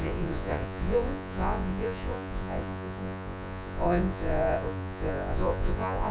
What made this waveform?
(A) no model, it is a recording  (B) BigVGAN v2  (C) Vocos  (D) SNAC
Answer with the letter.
C